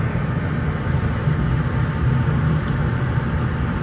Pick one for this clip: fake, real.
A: real